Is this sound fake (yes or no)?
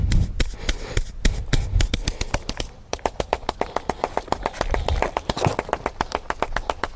no